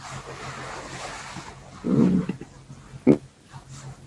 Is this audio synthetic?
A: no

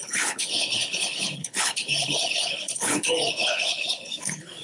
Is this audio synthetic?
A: yes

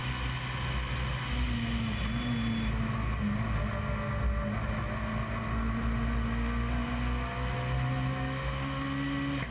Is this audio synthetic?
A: no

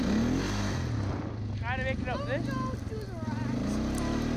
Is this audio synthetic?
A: no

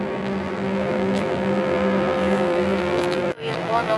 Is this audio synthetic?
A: yes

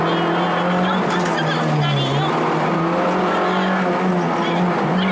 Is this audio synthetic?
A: no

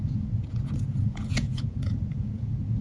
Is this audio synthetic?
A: yes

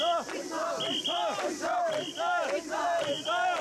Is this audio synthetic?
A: no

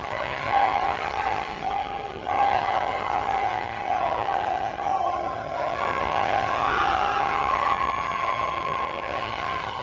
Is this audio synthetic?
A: yes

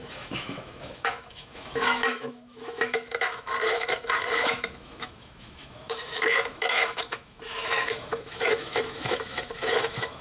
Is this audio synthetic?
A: yes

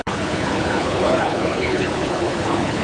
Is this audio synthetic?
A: yes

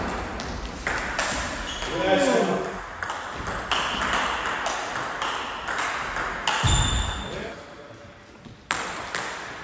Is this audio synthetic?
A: no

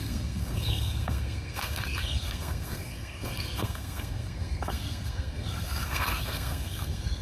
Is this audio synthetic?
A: yes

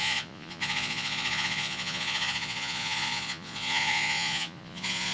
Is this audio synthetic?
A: yes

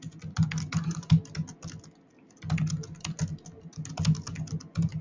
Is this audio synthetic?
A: no